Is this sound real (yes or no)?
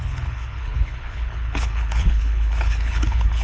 no